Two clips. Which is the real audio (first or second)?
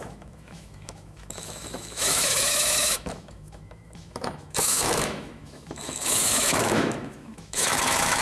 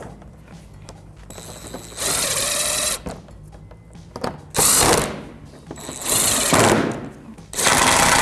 second